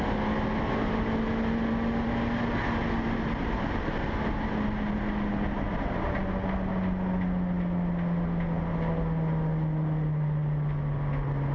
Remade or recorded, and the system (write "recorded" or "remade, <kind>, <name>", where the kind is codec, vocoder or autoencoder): recorded